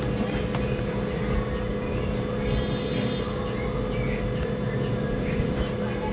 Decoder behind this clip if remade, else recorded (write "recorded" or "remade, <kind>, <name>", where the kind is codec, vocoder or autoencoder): recorded